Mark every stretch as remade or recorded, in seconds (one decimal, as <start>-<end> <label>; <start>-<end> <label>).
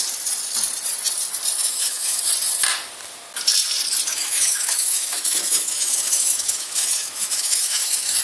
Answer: 0.0-1.6 recorded; 1.6-2.2 remade; 2.2-4.1 recorded; 4.1-8.2 remade